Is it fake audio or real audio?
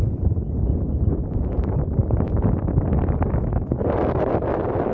fake